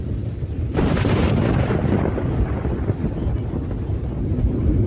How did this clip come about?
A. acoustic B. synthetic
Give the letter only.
A